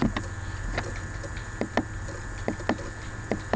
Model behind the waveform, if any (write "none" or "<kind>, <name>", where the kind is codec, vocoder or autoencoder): none